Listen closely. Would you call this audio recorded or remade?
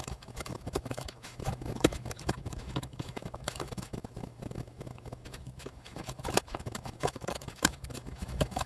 remade